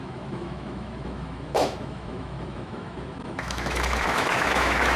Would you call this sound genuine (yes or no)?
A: no